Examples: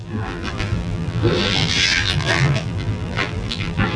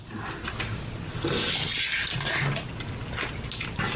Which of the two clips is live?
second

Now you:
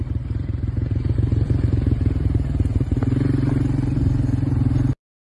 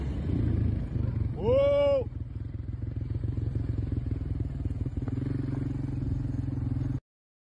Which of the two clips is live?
second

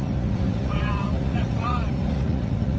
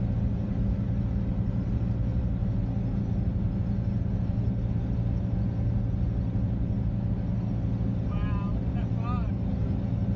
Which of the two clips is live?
second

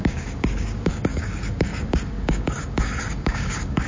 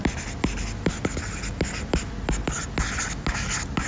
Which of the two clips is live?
second